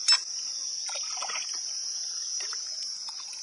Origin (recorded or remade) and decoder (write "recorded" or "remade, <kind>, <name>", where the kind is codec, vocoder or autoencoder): recorded